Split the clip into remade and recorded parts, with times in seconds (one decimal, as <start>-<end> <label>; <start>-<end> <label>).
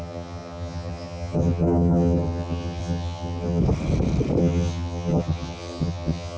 0.0-3.6 remade; 3.6-4.4 recorded; 4.4-6.4 remade